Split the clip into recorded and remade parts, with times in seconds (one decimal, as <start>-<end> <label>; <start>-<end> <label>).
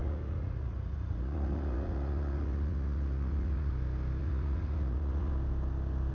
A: 0.0-3.7 remade; 3.7-4.2 recorded; 4.2-5.3 remade; 5.3-6.1 recorded